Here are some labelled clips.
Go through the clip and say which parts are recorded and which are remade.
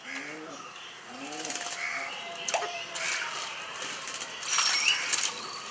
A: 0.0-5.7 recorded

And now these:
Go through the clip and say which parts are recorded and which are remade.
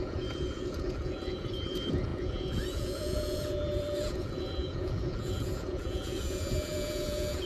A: 0.0-7.5 remade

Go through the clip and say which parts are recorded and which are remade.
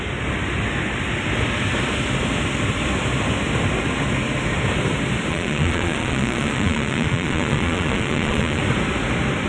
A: 0.0-5.3 recorded; 5.3-8.6 remade; 8.6-9.5 recorded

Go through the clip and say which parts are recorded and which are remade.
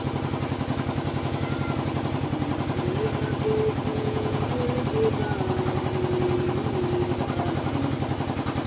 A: 0.0-3.9 recorded; 3.9-4.4 remade; 4.4-8.7 recorded